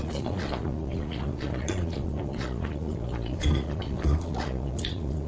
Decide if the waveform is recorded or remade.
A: remade